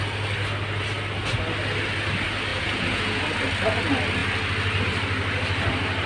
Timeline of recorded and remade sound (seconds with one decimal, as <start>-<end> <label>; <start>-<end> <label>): 0.0-2.5 recorded; 2.5-3.2 remade; 3.2-6.1 recorded